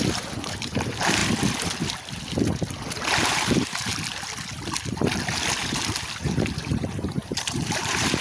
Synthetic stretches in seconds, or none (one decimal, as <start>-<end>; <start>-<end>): 0.0-1.2; 2.9-3.9; 7.1-8.2

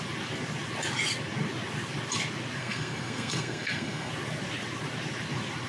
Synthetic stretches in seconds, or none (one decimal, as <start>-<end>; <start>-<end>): 2.6-4.1

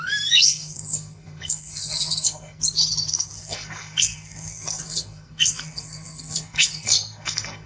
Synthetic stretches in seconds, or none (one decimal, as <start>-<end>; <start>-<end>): 0.0-2.6; 3.1-7.7

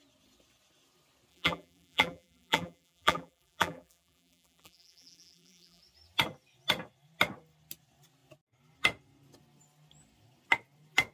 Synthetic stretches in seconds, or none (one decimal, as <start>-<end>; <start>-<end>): 1.3-5.8

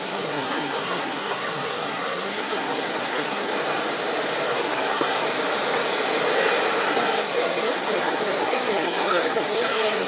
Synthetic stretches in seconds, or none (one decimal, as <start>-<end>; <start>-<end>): 0.0-3.5; 4.5-5.2; 6.8-10.1

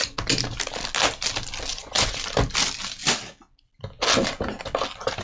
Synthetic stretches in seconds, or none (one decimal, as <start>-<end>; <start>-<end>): 1.7-2.2

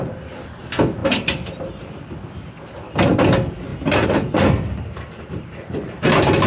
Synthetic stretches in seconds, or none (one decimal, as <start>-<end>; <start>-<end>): 3.7-6.0

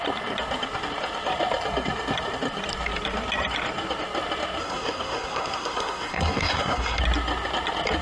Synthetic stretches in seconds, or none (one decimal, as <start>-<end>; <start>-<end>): 4.6-7.0